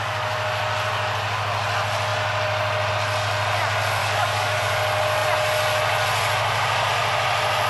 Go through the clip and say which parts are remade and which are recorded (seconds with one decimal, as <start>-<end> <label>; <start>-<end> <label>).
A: 0.0-4.0 recorded; 4.0-4.6 remade; 4.6-7.7 recorded